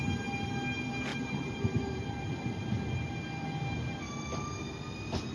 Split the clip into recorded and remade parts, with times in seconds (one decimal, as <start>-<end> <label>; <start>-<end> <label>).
0.0-1.1 recorded; 1.1-3.1 remade; 3.1-5.3 recorded

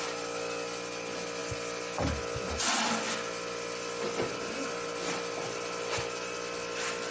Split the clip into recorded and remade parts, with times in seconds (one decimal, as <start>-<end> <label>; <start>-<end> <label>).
0.0-7.1 recorded